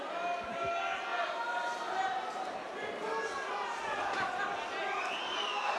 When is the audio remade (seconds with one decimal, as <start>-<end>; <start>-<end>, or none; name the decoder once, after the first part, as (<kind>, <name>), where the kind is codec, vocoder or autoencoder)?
none